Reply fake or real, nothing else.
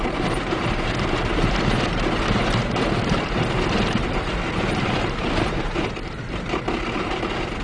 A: fake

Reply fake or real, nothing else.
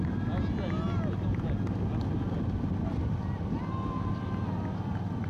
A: real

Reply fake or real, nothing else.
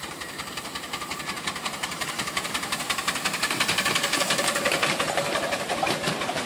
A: fake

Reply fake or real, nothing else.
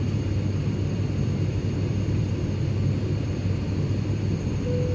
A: fake